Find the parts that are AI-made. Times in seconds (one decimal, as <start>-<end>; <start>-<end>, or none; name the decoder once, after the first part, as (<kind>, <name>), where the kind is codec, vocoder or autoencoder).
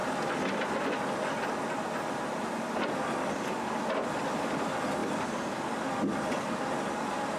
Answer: none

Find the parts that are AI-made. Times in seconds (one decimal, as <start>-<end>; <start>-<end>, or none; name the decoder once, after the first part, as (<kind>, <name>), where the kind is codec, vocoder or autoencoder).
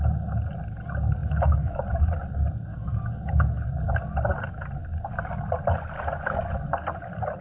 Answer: 1.2-1.8 (autoencoder, DAC-VAE); 2.7-3.3